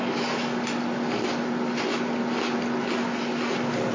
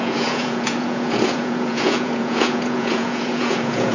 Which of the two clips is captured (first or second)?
first